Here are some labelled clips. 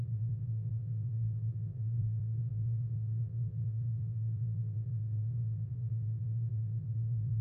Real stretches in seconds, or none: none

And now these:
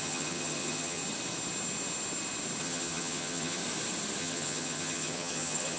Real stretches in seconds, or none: 1.0-2.6; 3.6-4.2

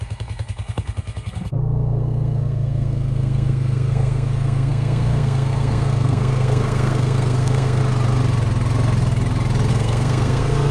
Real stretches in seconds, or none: 7.8-9.7

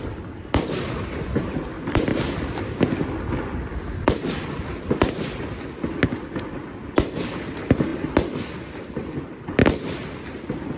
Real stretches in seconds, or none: 0.0-10.8